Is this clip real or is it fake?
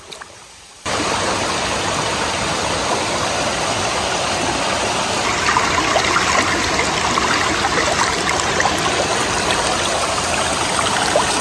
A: real